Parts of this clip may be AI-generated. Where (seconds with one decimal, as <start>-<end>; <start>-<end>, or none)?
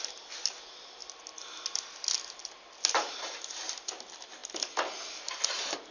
none